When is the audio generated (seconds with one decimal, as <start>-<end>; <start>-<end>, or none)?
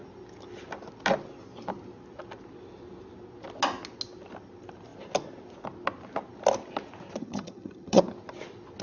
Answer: 7.2-8.0